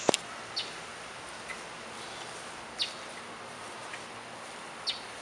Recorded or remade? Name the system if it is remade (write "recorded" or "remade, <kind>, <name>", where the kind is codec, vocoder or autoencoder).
recorded